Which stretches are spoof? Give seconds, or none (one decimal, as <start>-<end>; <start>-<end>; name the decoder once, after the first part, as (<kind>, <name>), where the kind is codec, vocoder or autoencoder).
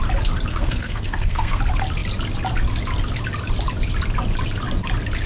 0.5-1.6 (codec, SNAC)